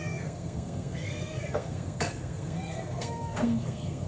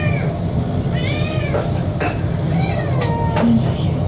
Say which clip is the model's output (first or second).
first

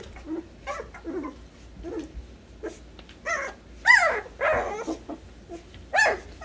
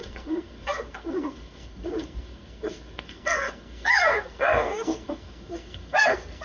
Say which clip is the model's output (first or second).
second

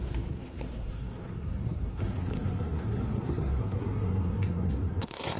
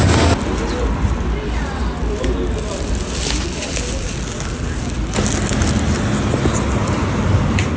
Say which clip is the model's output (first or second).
first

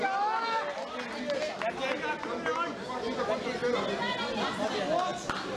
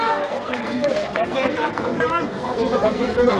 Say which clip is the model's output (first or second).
second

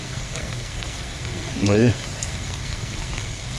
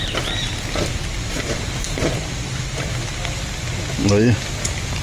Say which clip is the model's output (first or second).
first